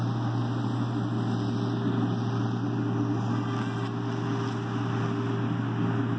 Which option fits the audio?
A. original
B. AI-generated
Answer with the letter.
A